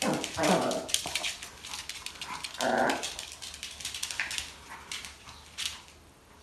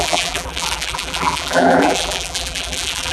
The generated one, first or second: second